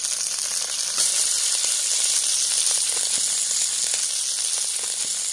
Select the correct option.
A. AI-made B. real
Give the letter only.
B